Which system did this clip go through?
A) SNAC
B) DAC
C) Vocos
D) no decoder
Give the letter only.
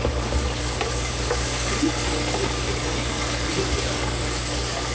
B